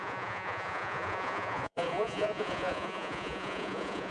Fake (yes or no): yes